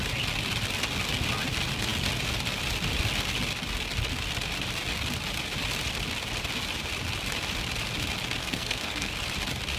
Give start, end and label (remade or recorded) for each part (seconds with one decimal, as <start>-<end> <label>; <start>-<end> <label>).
0.0-8.4 recorded; 8.4-9.1 remade; 9.1-9.8 recorded

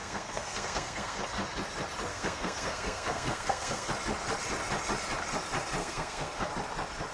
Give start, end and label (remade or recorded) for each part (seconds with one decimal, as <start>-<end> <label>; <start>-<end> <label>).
0.0-1.2 remade; 1.2-2.1 recorded; 2.1-3.9 remade; 3.9-5.8 recorded; 5.8-6.5 remade; 6.5-7.1 recorded

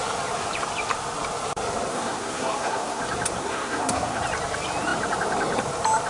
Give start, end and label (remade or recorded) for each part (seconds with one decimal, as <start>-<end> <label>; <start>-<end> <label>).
0.0-1.9 recorded; 1.9-3.0 remade; 3.0-3.4 recorded; 3.4-4.2 remade; 4.2-6.1 recorded

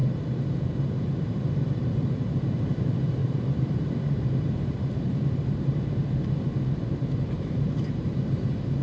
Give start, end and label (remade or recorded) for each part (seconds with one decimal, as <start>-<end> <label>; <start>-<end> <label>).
0.0-1.4 remade; 1.4-3.2 recorded; 3.2-8.2 remade; 8.2-8.8 recorded